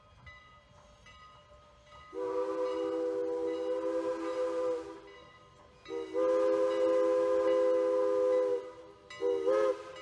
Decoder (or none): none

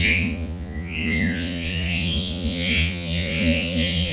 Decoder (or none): vocoder, Vocos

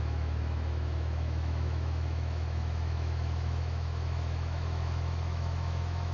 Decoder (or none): autoencoder, DAC-VAE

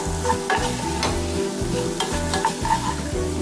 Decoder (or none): none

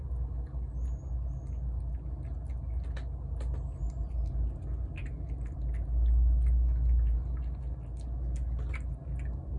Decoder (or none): none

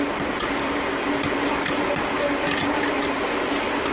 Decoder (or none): none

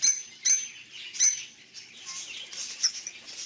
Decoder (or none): none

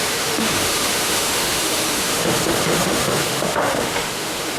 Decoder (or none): autoencoder, DAC-VAE